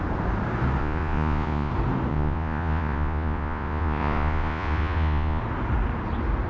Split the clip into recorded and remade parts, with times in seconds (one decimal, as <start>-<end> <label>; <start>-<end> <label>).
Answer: 0.0-0.8 recorded; 0.8-1.7 remade; 1.7-2.1 recorded; 2.1-5.4 remade; 5.4-6.5 recorded